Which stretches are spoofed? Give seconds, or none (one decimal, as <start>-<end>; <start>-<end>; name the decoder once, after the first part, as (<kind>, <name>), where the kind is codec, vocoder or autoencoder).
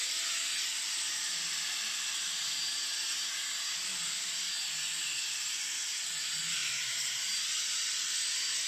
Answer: 3.9-4.6 (vocoder, BigVGAN v2)